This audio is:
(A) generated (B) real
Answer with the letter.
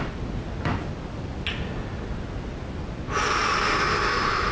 B